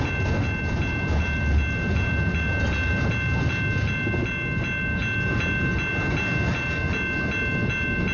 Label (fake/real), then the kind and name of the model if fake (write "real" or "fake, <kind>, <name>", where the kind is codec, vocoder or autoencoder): real